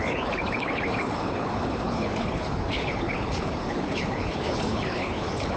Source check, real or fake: fake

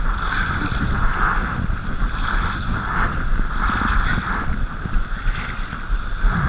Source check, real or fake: real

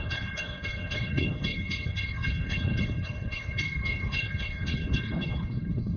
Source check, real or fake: fake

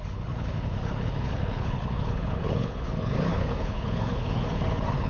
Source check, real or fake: fake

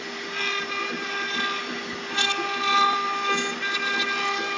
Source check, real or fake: real